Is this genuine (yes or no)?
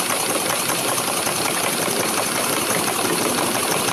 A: yes